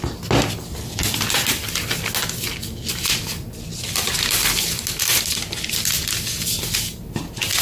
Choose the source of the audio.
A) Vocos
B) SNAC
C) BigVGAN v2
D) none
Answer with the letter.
D